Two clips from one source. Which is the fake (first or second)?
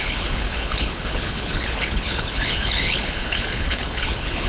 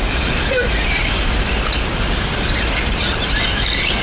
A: first